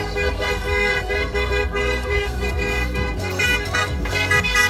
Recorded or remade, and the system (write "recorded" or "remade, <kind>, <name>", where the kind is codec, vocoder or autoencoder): remade, codec, SNAC